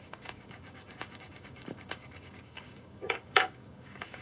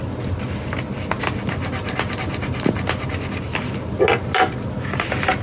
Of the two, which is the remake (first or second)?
first